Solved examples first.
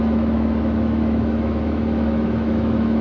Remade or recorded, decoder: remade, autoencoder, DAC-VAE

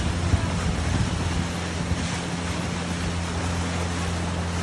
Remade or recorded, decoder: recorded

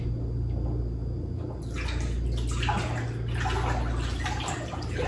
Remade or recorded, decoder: recorded